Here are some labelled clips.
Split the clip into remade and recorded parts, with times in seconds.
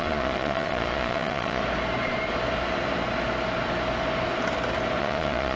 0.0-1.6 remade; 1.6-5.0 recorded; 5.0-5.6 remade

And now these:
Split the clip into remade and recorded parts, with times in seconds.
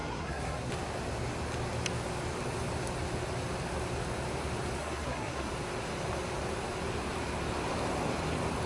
0.0-0.7 remade; 0.7-4.8 recorded; 4.8-5.5 remade; 5.5-8.7 recorded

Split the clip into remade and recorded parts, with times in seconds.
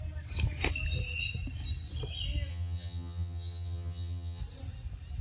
0.0-2.5 recorded; 2.5-4.4 remade; 4.4-5.2 recorded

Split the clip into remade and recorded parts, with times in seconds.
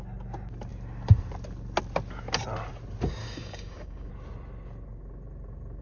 0.0-3.2 recorded; 3.2-4.1 remade; 4.1-5.8 recorded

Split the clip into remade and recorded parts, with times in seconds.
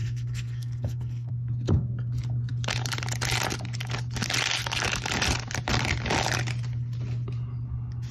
0.0-1.3 remade; 1.3-8.1 recorded